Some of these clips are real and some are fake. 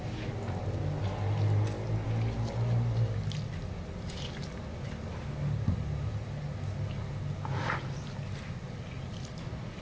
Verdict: real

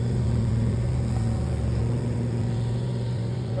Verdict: fake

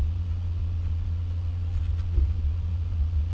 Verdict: fake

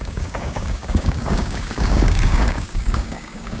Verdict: fake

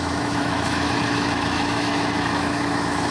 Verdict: fake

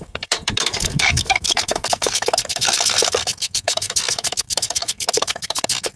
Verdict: fake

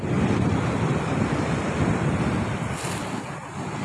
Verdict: real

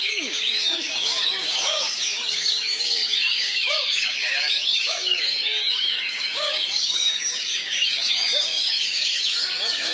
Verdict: fake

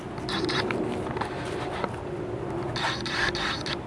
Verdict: real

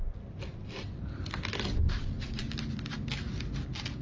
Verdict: real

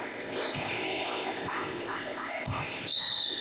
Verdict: fake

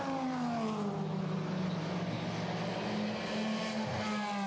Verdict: real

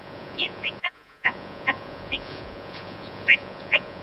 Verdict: fake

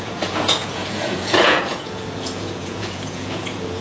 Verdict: fake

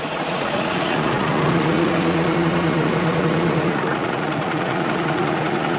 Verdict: fake